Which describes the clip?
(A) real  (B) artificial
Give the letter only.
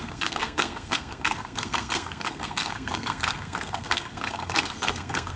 B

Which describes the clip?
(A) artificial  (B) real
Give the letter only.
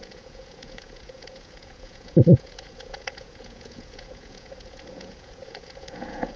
A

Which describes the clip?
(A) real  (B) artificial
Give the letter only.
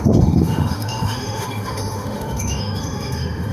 B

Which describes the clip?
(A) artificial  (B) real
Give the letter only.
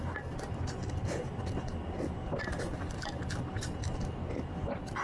B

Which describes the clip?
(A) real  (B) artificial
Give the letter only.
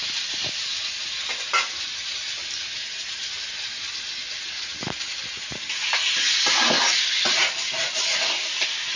A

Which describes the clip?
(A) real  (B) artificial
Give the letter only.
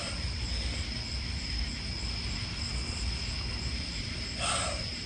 A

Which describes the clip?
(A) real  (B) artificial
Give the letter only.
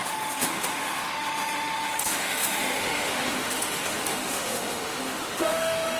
B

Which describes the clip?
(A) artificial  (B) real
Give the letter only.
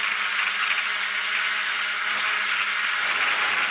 B